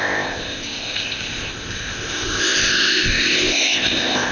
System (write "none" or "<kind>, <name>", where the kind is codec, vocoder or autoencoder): codec, ZipCodec